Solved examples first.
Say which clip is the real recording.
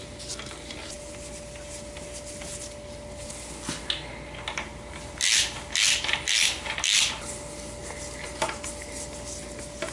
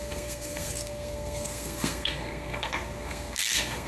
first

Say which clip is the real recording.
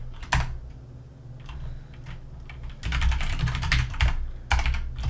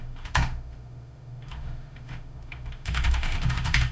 first